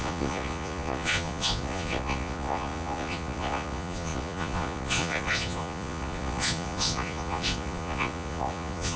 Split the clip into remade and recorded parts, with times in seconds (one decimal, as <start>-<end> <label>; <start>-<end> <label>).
0.0-9.0 remade